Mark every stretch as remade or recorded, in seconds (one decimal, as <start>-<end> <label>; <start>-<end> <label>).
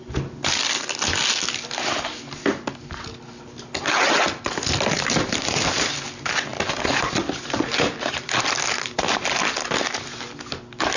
0.0-11.0 recorded